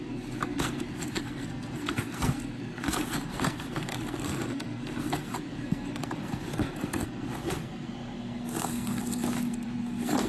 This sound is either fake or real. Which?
fake